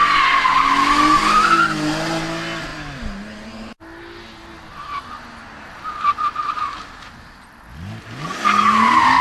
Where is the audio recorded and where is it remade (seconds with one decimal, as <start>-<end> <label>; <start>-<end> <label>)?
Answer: 0.0-9.2 recorded